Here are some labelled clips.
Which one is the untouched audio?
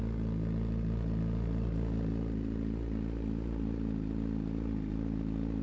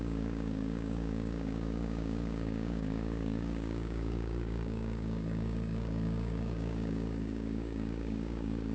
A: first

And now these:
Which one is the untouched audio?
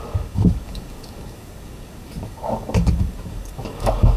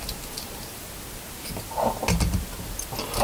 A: second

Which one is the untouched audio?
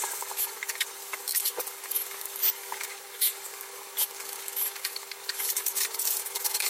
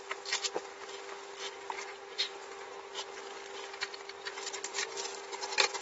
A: second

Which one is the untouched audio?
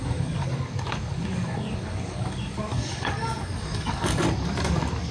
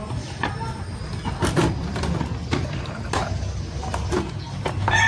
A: second